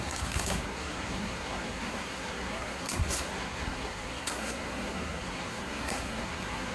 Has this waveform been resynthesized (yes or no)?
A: yes